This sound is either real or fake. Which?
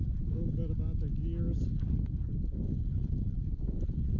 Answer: real